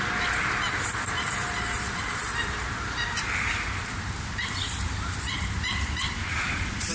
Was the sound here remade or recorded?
remade